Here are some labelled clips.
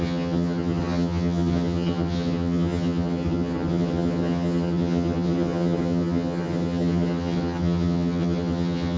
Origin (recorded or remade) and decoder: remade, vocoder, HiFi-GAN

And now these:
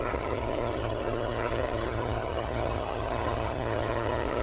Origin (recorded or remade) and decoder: remade, vocoder, HiFi-GAN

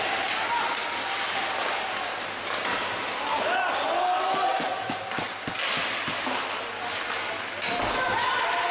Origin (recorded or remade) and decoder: recorded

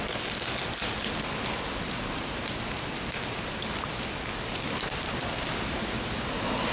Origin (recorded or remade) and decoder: recorded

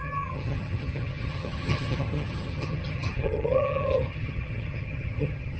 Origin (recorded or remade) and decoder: remade, vocoder, HiFi-GAN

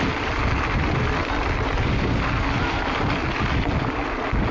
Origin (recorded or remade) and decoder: recorded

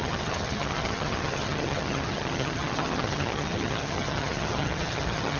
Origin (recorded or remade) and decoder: remade, vocoder, HiFi-GAN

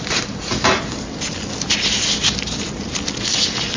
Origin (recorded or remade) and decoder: recorded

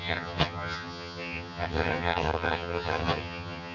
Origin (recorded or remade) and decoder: remade, vocoder, HiFi-GAN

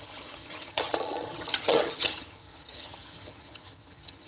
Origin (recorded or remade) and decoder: remade, vocoder, HiFi-GAN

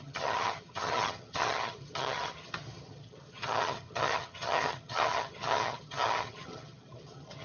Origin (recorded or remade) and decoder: remade, vocoder, HiFi-GAN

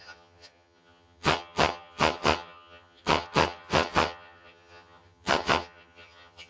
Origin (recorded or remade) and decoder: remade, vocoder, HiFi-GAN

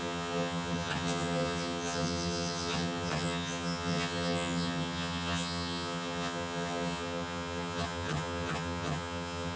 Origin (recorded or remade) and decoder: remade, vocoder, HiFi-GAN